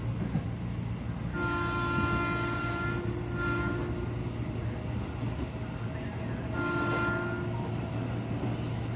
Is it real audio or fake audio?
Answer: real